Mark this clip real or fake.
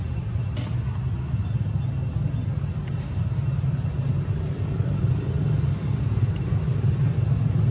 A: real